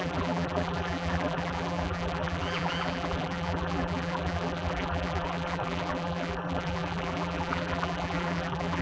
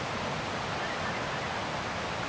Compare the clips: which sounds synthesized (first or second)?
first